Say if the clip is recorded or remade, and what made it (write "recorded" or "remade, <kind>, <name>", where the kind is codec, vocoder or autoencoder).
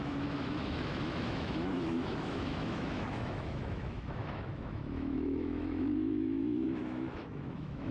remade, autoencoder, DAC-VAE